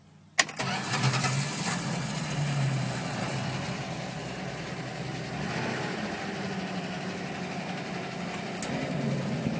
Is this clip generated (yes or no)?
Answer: no